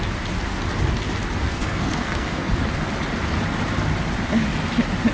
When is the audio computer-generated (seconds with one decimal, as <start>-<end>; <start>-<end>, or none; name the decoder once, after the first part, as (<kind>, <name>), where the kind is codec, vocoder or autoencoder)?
1.5-2.6 (codec, SNAC)